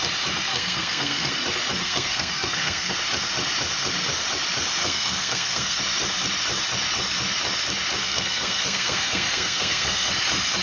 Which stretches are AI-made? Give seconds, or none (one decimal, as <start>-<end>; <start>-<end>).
0.5-1.3; 1.8-2.9; 4.8-5.8; 8.0-10.1